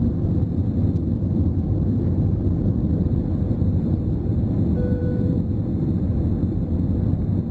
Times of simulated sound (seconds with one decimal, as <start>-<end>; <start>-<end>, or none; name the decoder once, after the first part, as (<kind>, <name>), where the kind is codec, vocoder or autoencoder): none